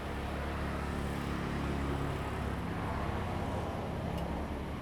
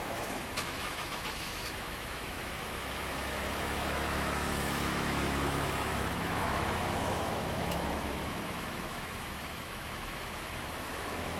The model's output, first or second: second